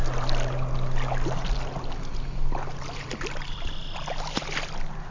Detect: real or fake real